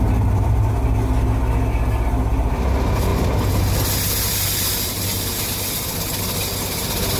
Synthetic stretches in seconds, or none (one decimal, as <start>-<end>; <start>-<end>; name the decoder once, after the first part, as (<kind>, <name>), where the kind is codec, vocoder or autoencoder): none